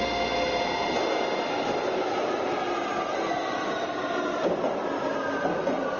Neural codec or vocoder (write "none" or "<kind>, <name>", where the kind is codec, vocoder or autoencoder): none